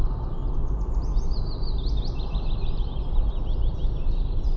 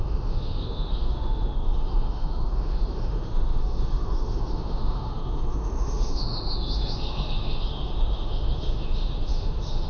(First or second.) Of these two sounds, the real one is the first